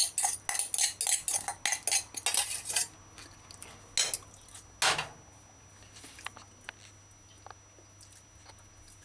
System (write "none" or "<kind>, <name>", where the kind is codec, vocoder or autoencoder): none